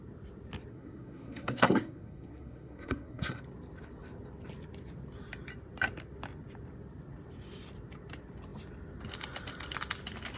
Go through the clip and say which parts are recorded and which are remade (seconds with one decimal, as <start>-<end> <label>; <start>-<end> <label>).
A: 0.0-0.7 recorded; 0.7-3.4 remade; 3.4-10.4 recorded